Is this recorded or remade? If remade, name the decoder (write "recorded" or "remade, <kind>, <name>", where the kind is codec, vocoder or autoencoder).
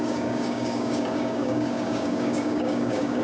remade, codec, DAC